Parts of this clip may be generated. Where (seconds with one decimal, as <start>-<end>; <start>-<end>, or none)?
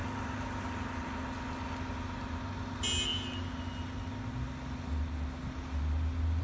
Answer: none